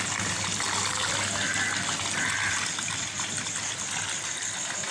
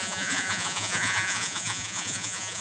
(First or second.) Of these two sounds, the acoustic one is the first